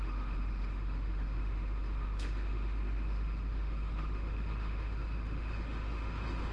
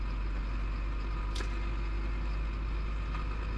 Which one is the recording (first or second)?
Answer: second